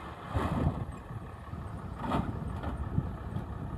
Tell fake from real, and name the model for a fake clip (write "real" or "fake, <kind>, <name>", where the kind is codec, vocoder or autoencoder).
fake, vocoder, BigVGAN v2